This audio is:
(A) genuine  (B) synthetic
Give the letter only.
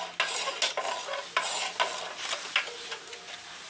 A